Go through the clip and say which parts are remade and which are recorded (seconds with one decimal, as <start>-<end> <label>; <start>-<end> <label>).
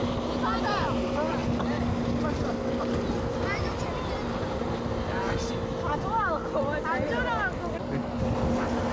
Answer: 0.0-8.9 recorded